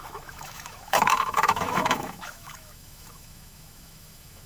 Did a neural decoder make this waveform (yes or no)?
yes